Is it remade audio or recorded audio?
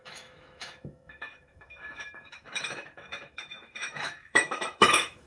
remade